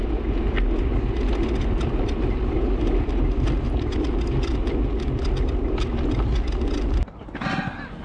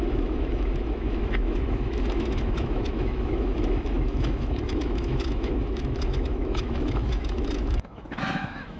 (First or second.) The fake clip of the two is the second